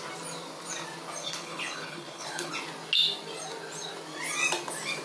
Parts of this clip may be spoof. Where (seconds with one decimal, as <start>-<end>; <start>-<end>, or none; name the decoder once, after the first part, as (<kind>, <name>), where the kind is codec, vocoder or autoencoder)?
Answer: 1.2-2.5 (codec, HILCodec)